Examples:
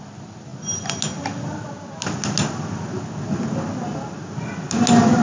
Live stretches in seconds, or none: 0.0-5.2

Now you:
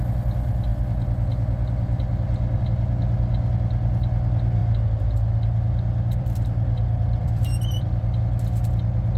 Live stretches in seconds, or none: 0.0-4.6; 8.2-9.2

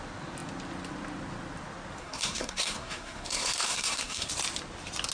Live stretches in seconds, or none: 0.0-2.0; 4.3-5.1